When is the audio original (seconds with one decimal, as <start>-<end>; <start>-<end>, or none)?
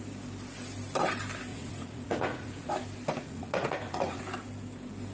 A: 0.0-1.5; 2.7-3.2; 4.2-5.1